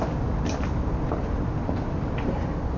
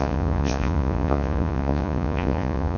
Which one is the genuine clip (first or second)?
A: first